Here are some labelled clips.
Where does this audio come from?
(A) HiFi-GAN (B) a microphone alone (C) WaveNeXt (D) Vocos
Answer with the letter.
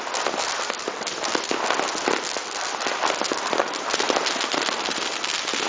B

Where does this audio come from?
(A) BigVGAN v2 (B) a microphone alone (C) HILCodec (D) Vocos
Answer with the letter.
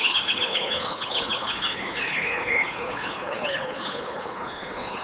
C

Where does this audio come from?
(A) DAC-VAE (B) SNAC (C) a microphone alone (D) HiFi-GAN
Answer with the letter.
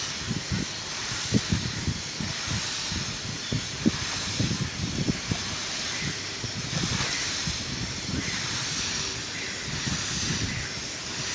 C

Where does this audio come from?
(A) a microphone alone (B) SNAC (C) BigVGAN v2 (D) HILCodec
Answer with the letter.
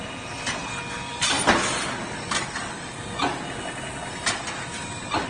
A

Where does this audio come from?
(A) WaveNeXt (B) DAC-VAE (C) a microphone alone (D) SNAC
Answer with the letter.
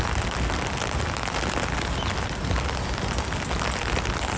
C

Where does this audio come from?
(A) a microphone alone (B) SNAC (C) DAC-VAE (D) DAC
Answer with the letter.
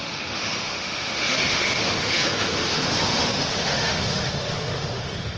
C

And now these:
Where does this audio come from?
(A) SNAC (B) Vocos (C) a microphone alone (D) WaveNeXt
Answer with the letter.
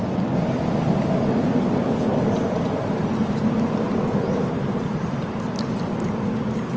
C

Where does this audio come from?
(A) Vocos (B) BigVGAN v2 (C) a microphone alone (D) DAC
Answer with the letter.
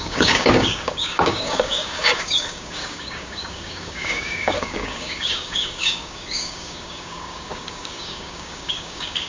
D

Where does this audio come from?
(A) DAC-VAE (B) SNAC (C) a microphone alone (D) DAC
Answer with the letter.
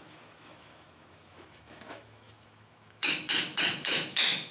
A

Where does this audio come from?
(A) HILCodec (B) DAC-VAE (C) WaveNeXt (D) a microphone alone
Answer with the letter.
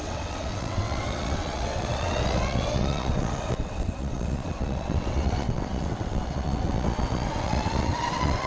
C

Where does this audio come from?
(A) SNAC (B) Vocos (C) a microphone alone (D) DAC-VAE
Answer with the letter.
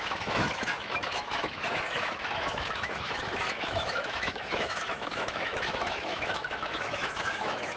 D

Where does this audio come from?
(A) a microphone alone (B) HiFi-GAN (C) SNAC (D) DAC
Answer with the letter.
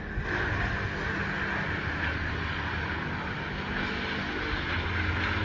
A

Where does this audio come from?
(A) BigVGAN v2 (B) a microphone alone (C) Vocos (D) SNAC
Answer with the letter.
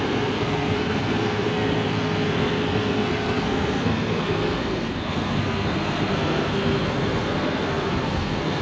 D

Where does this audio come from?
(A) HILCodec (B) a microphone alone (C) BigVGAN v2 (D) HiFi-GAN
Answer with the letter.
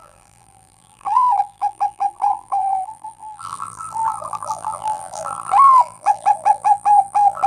C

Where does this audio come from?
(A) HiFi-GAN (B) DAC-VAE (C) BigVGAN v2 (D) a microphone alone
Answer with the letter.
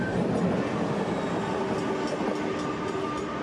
D